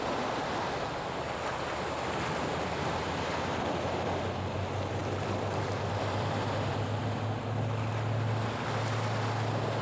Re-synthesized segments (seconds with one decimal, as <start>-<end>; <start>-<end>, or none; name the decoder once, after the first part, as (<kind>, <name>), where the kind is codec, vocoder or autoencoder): 2.5-3.6 (vocoder, BigVGAN v2)

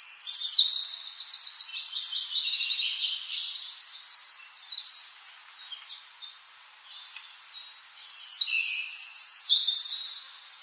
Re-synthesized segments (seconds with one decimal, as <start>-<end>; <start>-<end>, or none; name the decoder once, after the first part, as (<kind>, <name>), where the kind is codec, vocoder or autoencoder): 9.1-9.9 (vocoder, Vocos)

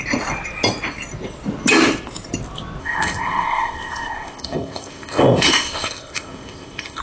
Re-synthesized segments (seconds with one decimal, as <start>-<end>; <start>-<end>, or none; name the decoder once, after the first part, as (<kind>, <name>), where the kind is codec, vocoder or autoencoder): 2.8-7.0 (codec, ZipCodec)

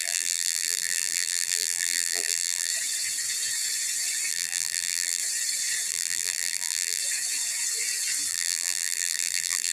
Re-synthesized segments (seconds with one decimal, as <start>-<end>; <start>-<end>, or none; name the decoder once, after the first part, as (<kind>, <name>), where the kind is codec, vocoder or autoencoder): 0.0-2.7 (vocoder, BigVGAN v2); 4.3-5.2; 5.9-7.0; 8.3-9.7

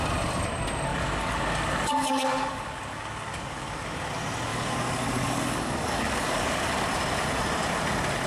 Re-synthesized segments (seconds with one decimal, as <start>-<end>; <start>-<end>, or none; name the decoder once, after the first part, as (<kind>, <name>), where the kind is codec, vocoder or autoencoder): 0.9-4.0 (codec, DAC); 4.5-6.7

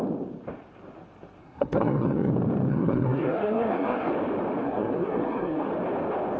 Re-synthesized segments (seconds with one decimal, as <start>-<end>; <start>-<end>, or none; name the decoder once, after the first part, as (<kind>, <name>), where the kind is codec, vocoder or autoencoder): 1.4-2.3 (codec, SNAC); 2.7-4.1; 4.6-5.7

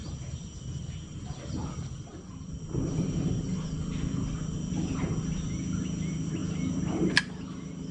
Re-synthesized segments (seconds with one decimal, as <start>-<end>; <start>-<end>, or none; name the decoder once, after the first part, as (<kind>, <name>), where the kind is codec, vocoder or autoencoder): none

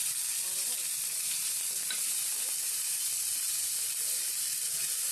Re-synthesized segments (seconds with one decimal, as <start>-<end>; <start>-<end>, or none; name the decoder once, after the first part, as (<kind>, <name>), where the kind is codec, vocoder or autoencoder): none